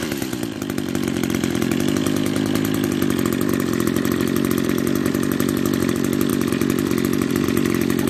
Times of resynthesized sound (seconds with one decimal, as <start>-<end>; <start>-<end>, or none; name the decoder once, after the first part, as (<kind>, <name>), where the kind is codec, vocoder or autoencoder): 0.0-6.3 (vocoder, BigVGAN v2); 7.3-8.1